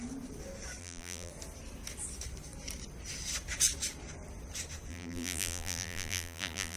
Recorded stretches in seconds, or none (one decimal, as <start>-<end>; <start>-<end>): 0.0-0.8; 1.3-4.9